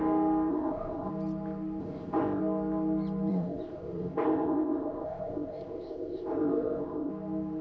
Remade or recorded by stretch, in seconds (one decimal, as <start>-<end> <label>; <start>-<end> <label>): 0.0-0.5 recorded; 0.5-1.1 remade; 1.1-1.8 recorded; 1.8-2.4 remade; 2.4-3.3 recorded; 3.3-7.1 remade; 7.1-7.6 recorded